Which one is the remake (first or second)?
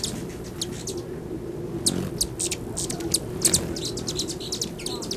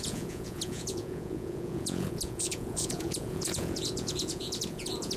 second